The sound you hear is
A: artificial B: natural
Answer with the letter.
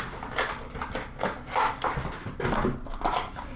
B